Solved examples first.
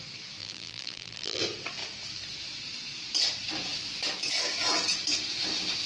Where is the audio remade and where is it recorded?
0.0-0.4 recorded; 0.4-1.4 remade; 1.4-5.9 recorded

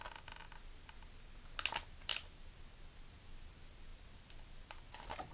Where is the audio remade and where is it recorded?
0.0-5.3 recorded

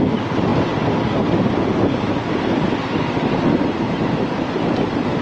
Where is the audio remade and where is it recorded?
0.0-5.2 recorded

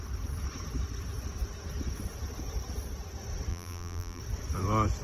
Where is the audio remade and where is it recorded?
0.0-3.5 recorded; 3.5-4.2 remade; 4.2-5.0 recorded

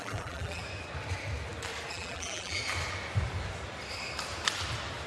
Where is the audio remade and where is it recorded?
0.0-0.6 remade; 0.6-1.9 recorded; 1.9-2.6 remade; 2.6-5.1 recorded